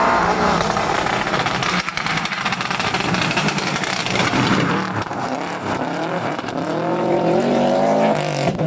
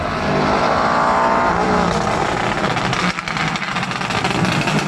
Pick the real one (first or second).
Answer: second